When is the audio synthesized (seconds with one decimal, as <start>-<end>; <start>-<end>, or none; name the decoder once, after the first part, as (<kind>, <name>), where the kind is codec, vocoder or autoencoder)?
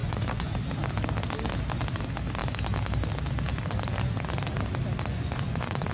0.0-0.6 (vocoder, Vocos); 5.1-5.9